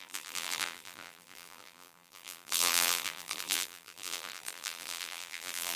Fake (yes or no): yes